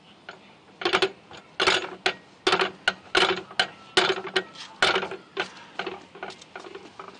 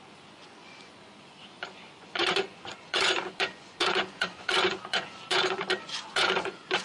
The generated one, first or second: second